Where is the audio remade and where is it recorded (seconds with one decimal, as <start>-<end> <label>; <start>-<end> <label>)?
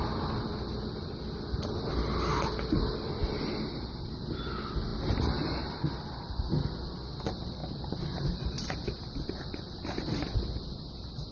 0.0-11.3 recorded